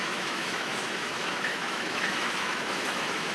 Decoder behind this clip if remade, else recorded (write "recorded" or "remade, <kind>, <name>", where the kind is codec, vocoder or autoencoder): remade, autoencoder, DAC-VAE